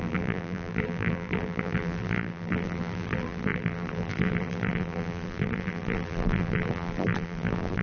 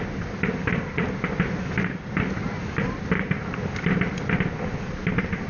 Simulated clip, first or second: first